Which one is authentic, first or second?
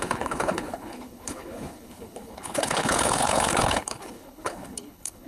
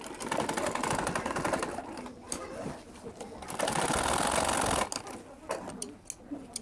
second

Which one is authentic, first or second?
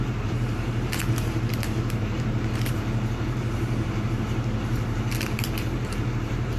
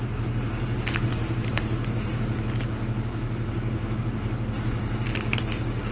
second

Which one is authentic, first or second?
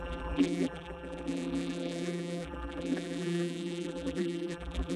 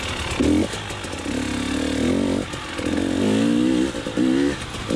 second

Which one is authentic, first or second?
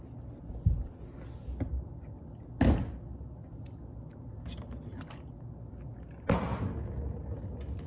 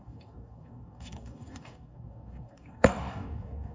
first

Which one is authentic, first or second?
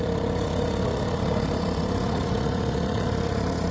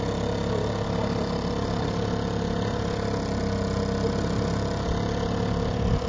second